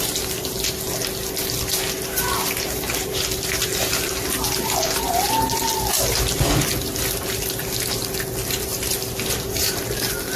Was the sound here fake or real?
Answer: real